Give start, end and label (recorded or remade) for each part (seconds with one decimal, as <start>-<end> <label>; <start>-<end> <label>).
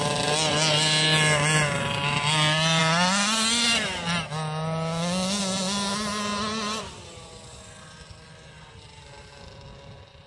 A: 0.0-10.3 recorded